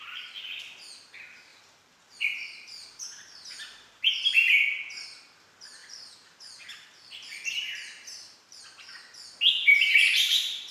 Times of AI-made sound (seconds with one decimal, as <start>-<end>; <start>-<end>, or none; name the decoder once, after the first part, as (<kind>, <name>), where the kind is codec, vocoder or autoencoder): 1.5-4.5 (vocoder, BigVGAN v2); 5.8-8.6; 9.6-10.7